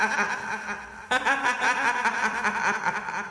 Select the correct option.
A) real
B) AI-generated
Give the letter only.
A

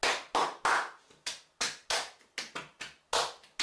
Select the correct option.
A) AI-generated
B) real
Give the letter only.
B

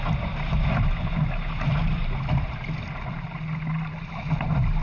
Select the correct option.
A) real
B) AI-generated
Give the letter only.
A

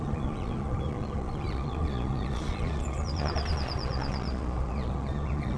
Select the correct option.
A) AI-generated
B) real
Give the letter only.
A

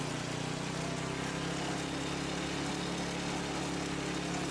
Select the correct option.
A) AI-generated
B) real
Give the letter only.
B